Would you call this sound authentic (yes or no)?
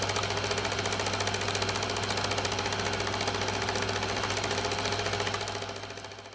yes